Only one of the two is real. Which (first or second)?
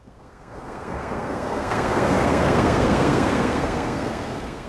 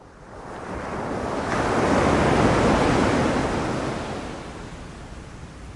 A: second